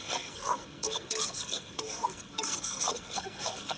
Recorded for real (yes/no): no